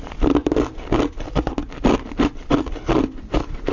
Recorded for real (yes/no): yes